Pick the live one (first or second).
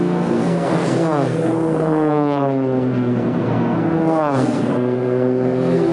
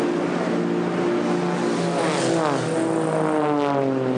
second